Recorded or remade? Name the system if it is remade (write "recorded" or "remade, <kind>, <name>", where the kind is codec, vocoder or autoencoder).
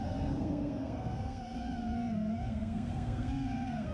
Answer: remade, codec, SNAC